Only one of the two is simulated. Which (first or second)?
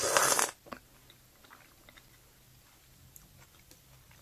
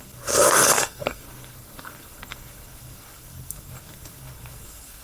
second